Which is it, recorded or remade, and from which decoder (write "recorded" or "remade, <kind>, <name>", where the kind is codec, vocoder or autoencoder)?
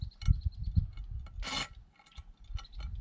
recorded